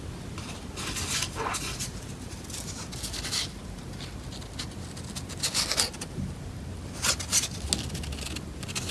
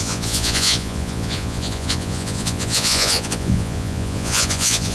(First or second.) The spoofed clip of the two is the second